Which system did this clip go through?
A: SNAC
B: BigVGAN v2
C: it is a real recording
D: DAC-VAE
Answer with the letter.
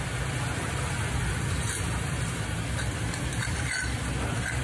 C